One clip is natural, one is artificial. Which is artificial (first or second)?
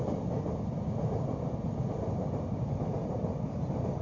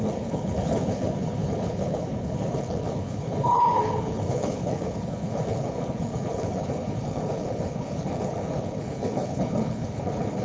second